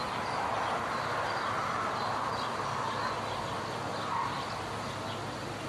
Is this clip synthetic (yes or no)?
no